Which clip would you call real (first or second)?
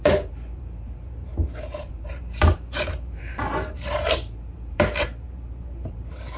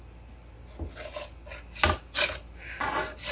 second